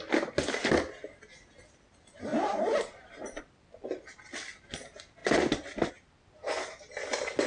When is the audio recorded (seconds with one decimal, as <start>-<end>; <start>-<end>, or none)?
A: 0.0-2.3; 3.4-7.5

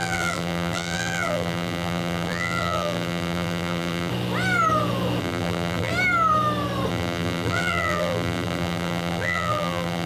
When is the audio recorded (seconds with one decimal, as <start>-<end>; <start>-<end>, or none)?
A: 4.1-5.2; 5.9-6.9

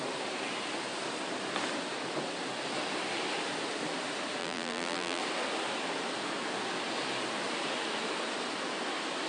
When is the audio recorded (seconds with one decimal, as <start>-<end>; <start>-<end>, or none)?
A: 0.0-4.4; 5.2-9.3

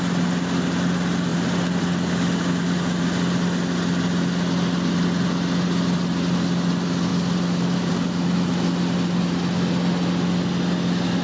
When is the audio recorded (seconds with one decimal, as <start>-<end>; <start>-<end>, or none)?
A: 0.0-1.3; 1.8-11.2

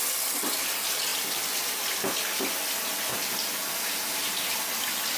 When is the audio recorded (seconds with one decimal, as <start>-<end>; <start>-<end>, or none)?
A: 0.0-1.1; 1.8-3.1; 4.3-5.2

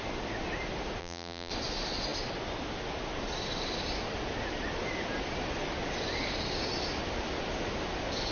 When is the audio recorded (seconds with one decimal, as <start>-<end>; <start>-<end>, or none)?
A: 0.0-1.0; 1.5-8.3

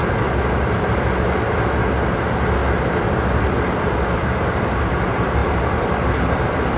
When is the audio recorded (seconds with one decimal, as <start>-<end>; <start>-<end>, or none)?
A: 0.0-2.6; 4.9-5.4